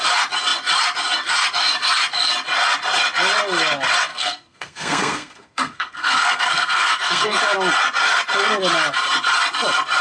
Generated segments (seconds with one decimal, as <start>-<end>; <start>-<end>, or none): 4.1-7.4